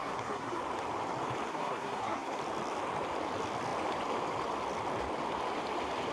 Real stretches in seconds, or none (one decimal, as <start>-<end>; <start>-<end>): 0.6-1.5; 2.4-6.1